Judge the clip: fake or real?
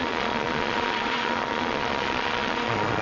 fake